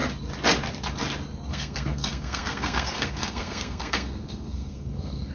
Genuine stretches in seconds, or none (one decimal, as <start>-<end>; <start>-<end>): 0.0-1.5